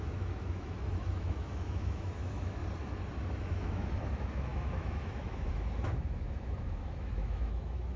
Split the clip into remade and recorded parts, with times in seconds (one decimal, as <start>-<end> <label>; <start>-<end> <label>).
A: 0.0-2.6 remade; 2.6-3.4 recorded; 3.4-8.0 remade